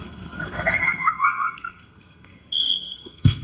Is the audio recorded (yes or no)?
no